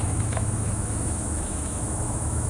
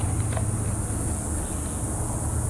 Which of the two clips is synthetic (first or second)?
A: first